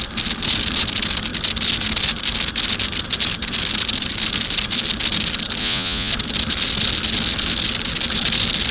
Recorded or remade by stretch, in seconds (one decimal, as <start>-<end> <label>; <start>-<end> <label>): 0.0-5.6 recorded; 5.6-6.1 remade; 6.1-8.7 recorded